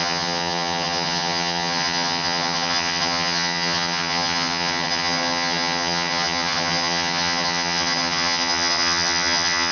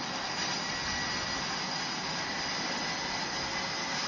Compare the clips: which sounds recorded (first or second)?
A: second